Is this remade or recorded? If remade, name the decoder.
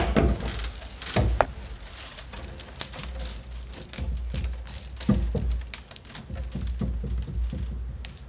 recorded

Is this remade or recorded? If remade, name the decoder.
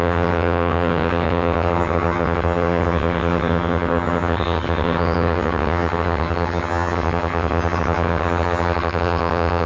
remade, vocoder, HiFi-GAN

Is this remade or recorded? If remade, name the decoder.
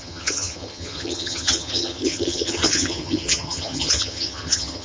remade, vocoder, HiFi-GAN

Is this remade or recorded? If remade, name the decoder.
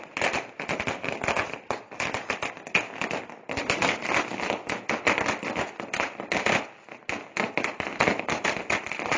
recorded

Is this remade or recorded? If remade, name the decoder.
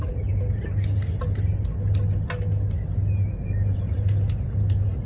recorded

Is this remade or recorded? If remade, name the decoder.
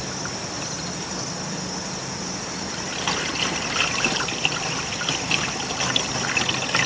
recorded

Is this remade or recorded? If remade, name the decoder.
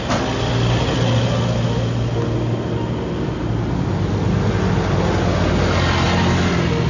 recorded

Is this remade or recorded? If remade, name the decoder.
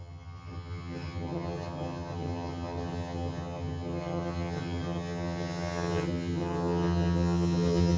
remade, vocoder, HiFi-GAN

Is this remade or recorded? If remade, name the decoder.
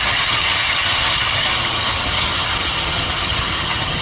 remade, vocoder, HiFi-GAN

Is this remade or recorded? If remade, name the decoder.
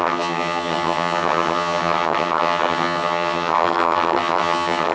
remade, vocoder, HiFi-GAN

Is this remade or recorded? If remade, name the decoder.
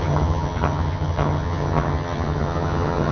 remade, vocoder, HiFi-GAN